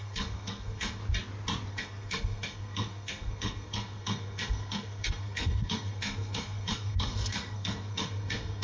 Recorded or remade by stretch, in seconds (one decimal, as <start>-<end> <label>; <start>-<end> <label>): 0.0-1.0 remade; 1.0-1.7 recorded; 1.7-8.6 remade